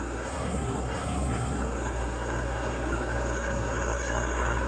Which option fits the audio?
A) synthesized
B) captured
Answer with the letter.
A